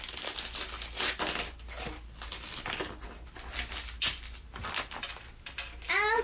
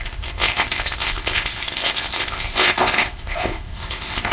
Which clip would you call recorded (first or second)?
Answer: first